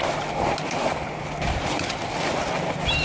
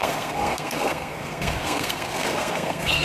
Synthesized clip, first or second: second